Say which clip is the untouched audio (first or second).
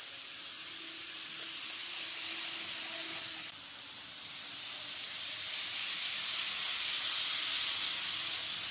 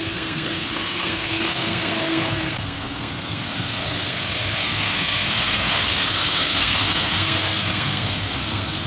first